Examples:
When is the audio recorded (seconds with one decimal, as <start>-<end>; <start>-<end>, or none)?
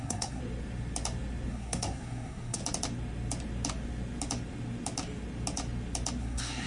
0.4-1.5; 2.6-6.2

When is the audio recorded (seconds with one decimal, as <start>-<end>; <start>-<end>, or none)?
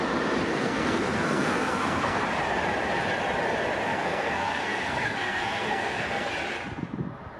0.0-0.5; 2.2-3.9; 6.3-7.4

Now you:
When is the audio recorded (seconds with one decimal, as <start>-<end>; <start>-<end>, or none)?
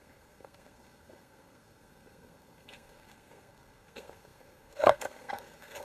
none